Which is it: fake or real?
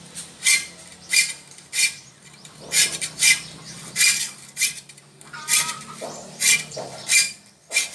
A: fake